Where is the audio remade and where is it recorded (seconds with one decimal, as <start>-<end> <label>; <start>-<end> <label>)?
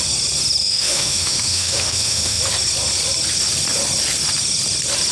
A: 0.0-0.6 recorded; 0.6-2.4 remade; 2.4-5.1 recorded